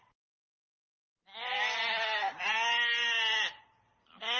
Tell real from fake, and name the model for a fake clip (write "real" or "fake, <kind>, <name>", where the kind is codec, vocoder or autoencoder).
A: real